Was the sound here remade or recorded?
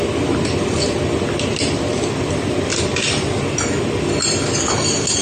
recorded